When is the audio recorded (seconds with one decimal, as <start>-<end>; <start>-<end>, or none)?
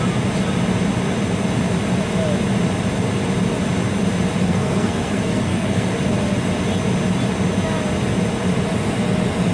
0.0-4.4; 5.9-9.5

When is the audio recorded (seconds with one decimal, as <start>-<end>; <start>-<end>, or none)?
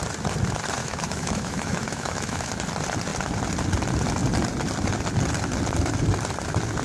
0.0-0.8; 2.5-6.8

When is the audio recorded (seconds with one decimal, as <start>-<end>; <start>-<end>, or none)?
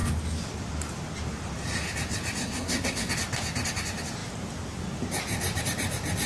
0.0-2.4; 3.1-6.3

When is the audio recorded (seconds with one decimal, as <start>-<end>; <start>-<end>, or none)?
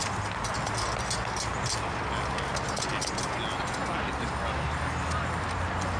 0.0-6.0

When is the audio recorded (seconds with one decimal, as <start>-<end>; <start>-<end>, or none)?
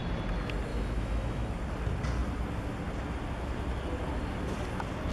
0.0-0.7; 1.5-5.1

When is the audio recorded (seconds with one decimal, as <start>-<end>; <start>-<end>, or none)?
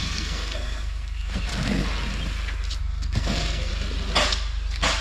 1.5-2.8; 3.7-5.0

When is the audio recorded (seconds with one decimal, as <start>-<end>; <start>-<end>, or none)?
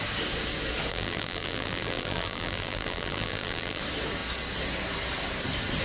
0.0-0.9; 3.8-5.8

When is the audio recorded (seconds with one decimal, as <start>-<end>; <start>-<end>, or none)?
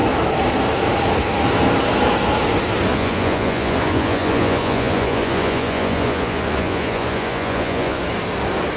0.0-2.9; 8.0-8.8